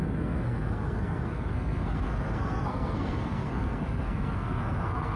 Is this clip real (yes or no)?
no